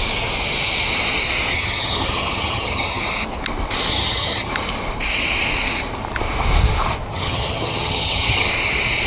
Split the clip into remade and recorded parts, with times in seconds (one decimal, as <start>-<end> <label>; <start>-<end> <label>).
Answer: 0.0-1.5 recorded; 1.5-3.0 remade; 3.0-3.9 recorded; 3.9-4.5 remade; 4.5-7.1 recorded; 7.1-8.5 remade; 8.5-9.1 recorded